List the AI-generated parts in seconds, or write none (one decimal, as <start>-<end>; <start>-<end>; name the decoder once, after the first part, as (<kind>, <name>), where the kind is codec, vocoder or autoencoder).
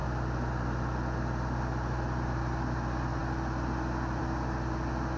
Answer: none